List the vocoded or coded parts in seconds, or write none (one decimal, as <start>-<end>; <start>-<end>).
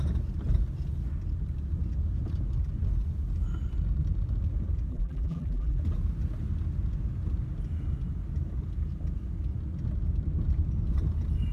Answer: 4.9-5.8